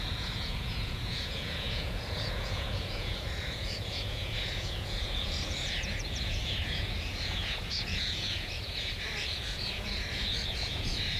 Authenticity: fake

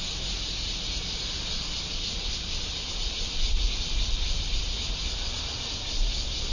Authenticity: real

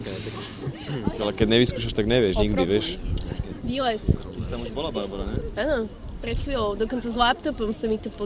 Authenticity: real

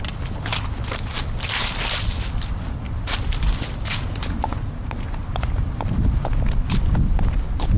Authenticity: real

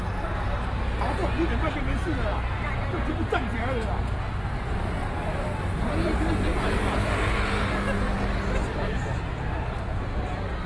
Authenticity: real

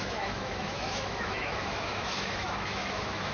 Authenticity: fake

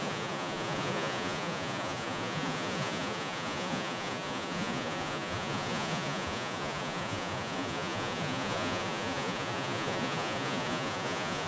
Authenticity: fake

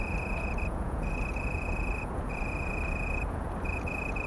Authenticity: fake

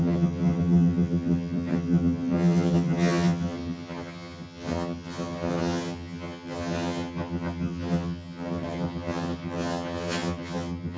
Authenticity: fake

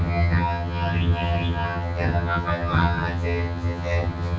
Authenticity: fake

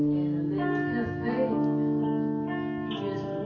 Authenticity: real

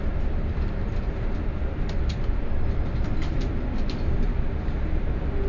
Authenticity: real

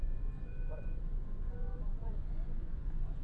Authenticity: fake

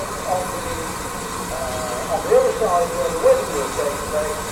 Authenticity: real